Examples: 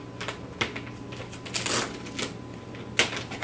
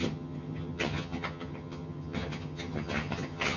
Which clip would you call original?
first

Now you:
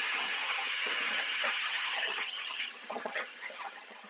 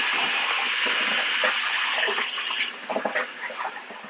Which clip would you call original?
second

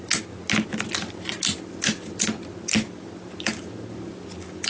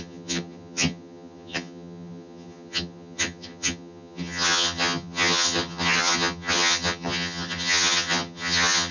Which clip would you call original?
first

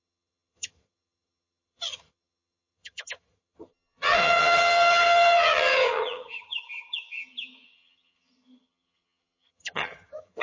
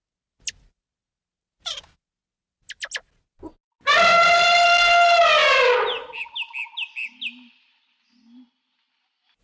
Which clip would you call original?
second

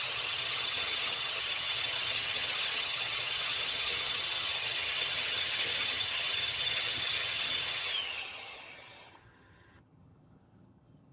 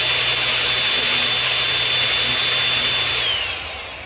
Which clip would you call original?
second